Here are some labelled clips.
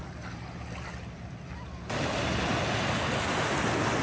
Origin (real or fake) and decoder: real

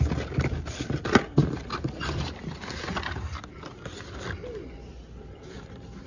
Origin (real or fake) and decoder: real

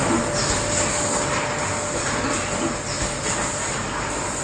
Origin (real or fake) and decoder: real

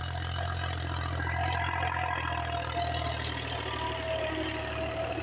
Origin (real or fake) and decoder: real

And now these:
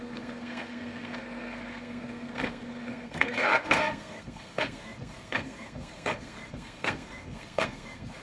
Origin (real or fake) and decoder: fake, codec, SNAC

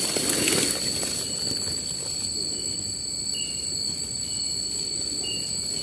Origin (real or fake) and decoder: real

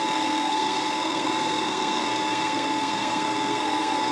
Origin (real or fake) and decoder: fake, codec, SNAC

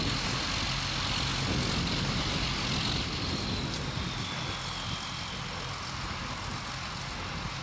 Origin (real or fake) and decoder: real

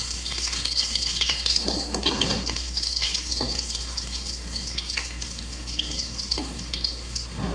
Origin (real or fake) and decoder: fake, codec, SNAC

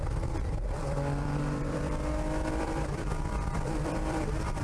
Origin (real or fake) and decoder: fake, vocoder, BigVGAN v2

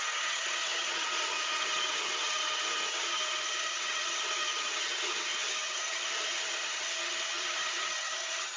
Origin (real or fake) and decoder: fake, vocoder, HiFi-GAN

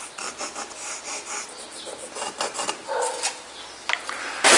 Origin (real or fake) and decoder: real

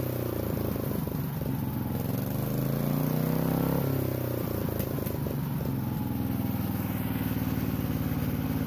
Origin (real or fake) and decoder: real